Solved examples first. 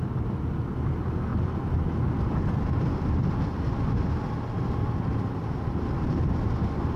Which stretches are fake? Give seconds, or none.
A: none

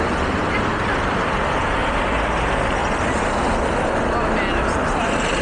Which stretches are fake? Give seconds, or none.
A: none

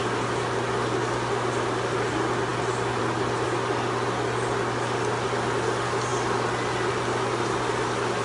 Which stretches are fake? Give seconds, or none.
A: none

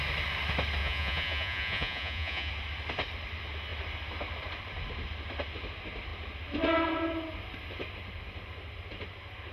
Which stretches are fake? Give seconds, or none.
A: 0.8-2.5